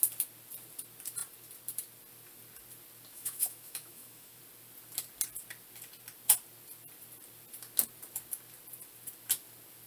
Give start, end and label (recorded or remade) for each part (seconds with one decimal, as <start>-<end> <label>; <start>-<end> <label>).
0.0-3.1 recorded; 3.1-4.4 remade; 4.4-9.9 recorded